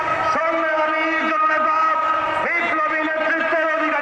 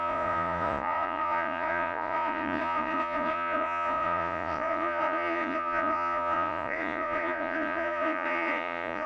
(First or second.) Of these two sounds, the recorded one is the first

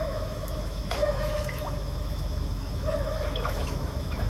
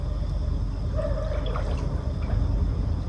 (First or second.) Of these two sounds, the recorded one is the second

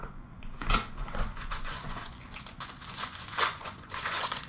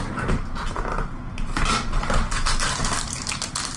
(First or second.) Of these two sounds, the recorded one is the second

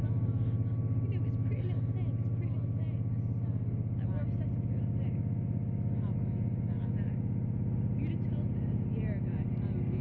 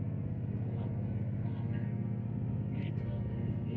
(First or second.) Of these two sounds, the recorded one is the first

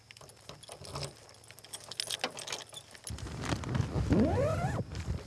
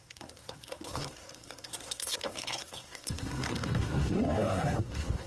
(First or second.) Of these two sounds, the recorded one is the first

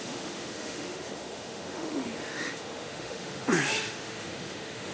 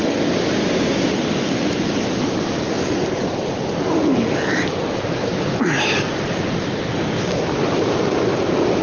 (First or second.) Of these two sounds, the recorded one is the second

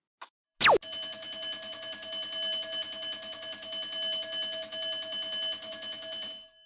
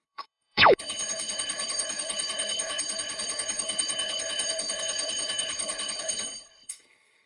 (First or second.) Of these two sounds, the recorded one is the first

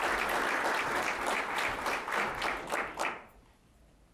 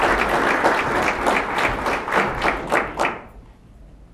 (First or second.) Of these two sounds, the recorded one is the second